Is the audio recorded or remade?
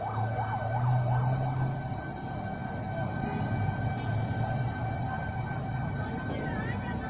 recorded